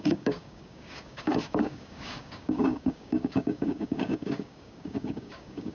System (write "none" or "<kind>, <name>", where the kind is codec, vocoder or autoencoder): codec, DAC